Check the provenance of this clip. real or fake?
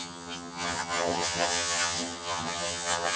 fake